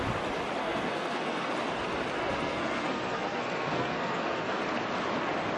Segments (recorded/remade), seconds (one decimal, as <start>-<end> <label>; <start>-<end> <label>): 0.0-0.6 recorded; 0.6-1.5 remade; 1.5-2.2 recorded; 2.2-4.6 remade; 4.6-5.6 recorded